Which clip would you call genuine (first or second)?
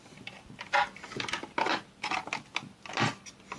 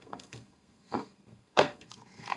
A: first